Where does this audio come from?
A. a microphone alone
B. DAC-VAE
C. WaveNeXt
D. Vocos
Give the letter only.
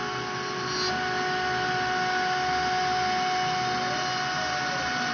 A